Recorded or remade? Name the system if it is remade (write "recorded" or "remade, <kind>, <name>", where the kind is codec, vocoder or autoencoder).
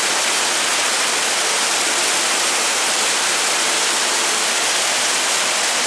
recorded